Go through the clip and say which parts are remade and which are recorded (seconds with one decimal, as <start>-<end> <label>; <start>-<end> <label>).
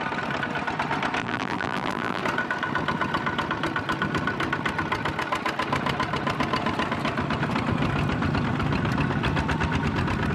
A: 0.0-1.2 recorded; 1.2-2.2 remade; 2.2-10.3 recorded